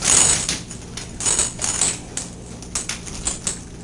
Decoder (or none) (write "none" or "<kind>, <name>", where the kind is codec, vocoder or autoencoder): none